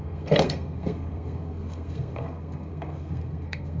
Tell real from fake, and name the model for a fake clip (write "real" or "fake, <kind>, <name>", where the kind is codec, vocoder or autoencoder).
fake, codec, SNAC